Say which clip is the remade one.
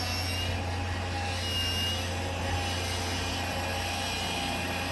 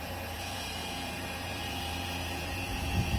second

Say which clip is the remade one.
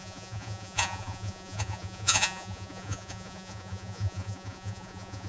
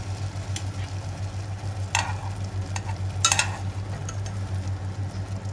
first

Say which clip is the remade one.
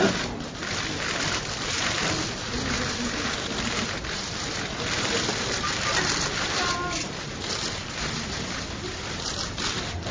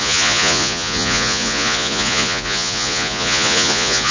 second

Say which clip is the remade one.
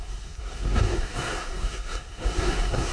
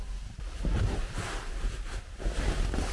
first